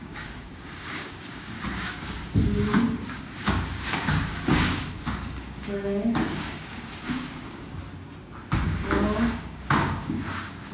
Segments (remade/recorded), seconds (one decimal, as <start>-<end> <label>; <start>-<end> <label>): 0.0-7.8 remade; 7.8-8.7 recorded; 8.7-10.7 remade

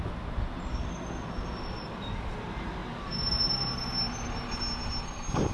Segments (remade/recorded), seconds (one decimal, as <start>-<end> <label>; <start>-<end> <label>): 0.0-5.5 recorded

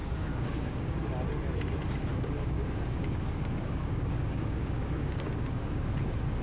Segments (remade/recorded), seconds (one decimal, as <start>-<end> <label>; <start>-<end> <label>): 0.0-1.0 remade; 1.0-2.1 recorded; 2.1-5.9 remade; 5.9-6.4 recorded

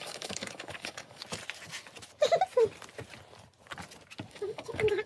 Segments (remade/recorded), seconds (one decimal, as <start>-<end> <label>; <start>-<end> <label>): 0.0-1.2 remade; 1.2-4.3 recorded; 4.3-5.1 remade

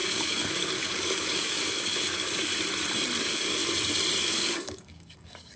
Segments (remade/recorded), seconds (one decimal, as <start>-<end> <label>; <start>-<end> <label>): 0.0-2.5 remade; 2.5-3.2 recorded; 3.2-3.6 remade; 3.6-4.2 recorded; 4.2-5.6 remade

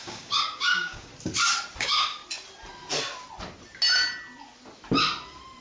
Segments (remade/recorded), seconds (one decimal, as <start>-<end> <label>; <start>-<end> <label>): 0.0-1.1 remade; 1.1-1.8 recorded; 1.8-2.2 remade; 2.2-5.6 recorded

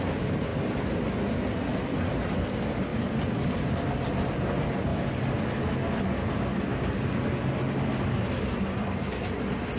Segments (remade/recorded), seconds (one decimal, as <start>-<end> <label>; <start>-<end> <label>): 0.0-9.8 recorded

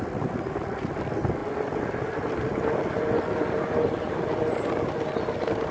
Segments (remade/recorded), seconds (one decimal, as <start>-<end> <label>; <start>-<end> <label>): 0.0-5.7 recorded